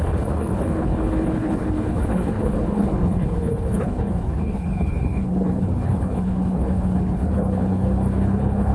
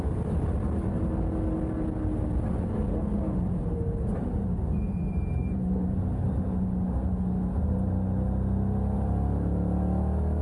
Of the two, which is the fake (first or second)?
first